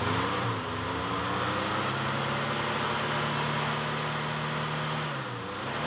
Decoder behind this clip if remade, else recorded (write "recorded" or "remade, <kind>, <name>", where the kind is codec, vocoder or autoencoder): recorded